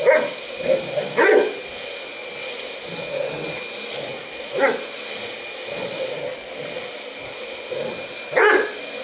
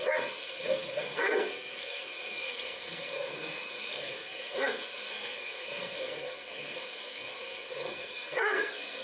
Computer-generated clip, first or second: second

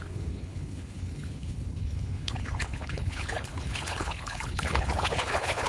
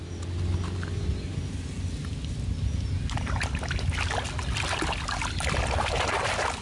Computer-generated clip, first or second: first